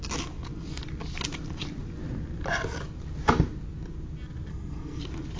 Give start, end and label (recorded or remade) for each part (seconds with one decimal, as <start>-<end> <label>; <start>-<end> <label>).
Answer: 0.0-4.5 recorded; 4.5-5.0 remade; 5.0-5.4 recorded